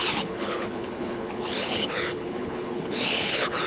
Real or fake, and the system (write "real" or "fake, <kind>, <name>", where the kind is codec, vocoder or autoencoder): fake, codec, HILCodec